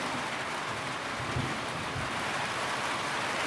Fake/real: fake